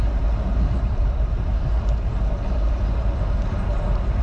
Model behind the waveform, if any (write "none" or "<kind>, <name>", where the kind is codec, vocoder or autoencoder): vocoder, BigVGAN v2